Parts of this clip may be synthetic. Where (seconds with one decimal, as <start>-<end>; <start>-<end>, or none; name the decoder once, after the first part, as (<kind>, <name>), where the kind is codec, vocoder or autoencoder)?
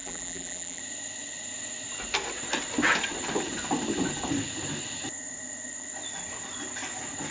0.0-0.8 (vocoder, BigVGAN v2)